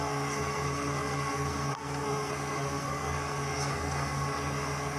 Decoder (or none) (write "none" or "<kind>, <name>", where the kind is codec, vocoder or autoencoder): codec, SNAC